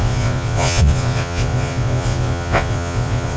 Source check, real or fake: fake